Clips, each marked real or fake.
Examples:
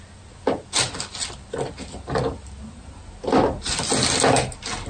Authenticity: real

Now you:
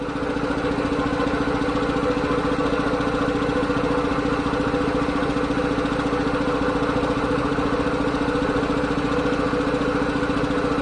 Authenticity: real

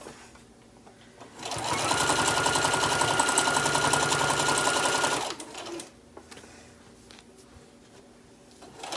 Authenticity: real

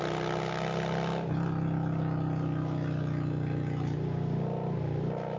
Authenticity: real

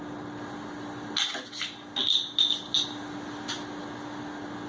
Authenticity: real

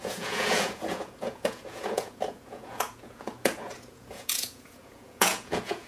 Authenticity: fake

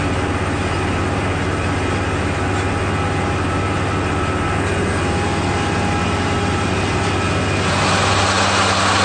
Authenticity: real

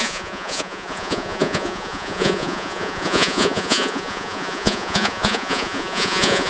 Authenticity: fake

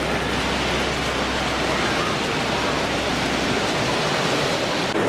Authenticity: real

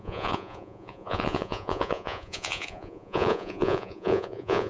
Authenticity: fake